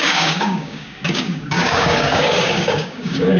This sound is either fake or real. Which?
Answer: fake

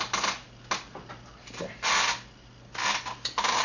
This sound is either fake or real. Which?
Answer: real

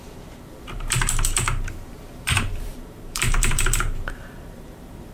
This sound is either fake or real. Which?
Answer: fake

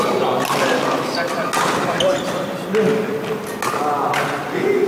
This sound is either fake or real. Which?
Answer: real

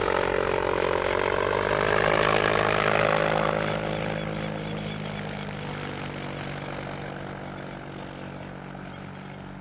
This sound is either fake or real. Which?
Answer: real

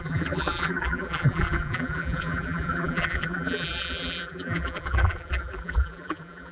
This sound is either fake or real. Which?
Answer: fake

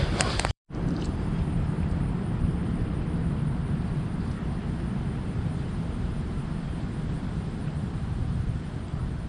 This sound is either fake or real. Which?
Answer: fake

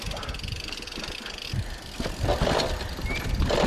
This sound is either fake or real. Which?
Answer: real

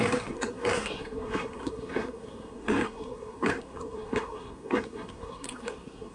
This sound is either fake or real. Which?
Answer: fake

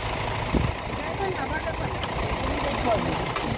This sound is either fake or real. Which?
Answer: real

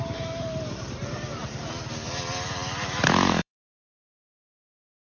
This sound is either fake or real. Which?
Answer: fake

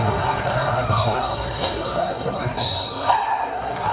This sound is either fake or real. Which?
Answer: fake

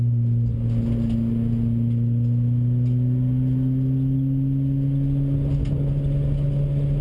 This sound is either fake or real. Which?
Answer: real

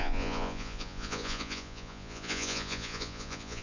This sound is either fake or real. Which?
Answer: fake